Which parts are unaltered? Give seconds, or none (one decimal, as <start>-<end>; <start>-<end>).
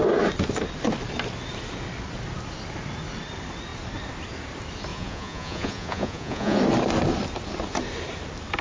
0.0-4.9; 6.6-8.6